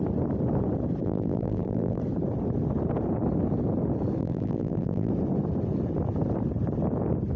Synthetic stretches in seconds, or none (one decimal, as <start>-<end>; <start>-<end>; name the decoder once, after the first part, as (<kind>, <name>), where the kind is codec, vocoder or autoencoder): 1.0-2.0 (vocoder, BigVGAN v2); 4.2-5.1